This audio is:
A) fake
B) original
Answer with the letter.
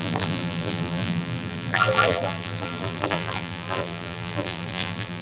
A